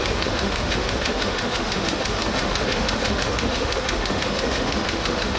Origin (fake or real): fake